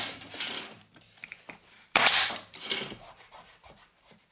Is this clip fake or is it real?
fake